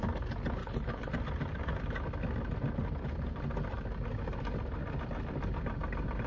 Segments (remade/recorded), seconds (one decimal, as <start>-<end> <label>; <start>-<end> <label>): 0.0-0.6 recorded; 0.6-1.1 remade; 1.1-6.3 recorded